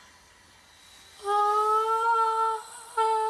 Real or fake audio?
real